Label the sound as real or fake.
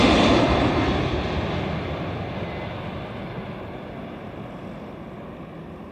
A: real